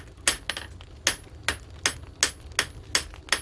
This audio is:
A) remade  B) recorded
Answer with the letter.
B